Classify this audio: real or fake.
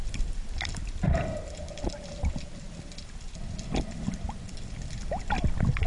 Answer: real